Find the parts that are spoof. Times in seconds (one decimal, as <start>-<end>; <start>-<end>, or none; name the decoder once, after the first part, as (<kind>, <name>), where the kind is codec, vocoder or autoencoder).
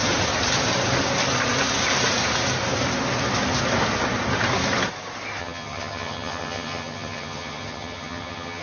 5.4-8.6 (vocoder, HiFi-GAN)